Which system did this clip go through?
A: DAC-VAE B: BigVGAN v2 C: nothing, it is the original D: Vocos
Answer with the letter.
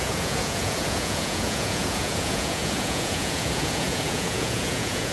D